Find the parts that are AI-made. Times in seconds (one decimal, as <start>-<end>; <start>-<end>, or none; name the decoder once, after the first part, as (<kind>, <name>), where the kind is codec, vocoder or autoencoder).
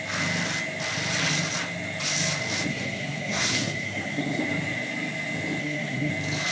2.7-4.4 (codec, SNAC); 5.6-6.1